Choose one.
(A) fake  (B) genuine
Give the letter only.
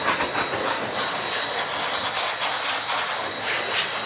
B